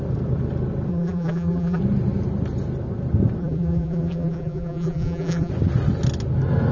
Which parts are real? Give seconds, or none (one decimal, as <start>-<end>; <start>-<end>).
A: 0.0-0.9; 1.8-3.4; 5.5-6.7